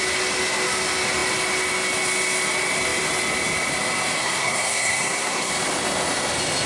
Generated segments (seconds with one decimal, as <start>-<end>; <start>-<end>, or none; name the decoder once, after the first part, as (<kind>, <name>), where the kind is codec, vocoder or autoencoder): 4.2-5.5 (codec, SNAC)